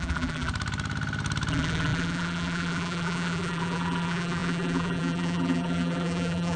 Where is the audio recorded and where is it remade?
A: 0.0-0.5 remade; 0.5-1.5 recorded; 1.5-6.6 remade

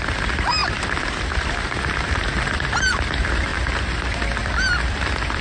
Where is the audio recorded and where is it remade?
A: 0.0-3.5 recorded; 3.5-4.0 remade; 4.0-5.4 recorded

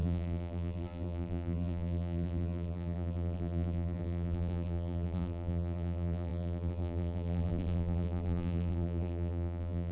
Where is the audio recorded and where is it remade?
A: 0.0-9.9 remade